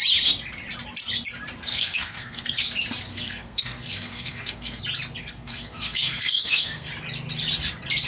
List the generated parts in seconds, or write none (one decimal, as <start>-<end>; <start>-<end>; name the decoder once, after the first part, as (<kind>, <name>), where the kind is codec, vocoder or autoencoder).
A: 1.7-2.6 (codec, SNAC); 3.1-4.8; 5.2-6.9